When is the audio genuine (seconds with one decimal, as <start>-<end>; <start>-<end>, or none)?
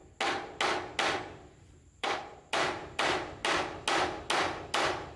0.0-1.2; 3.4-5.2